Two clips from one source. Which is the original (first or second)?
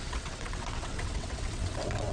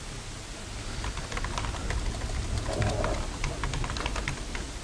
second